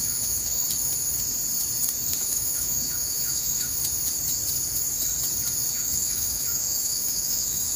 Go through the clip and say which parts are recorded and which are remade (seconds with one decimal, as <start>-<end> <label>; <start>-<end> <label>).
0.0-0.6 remade; 0.6-2.2 recorded; 2.2-3.8 remade; 3.8-5.7 recorded; 5.7-7.8 remade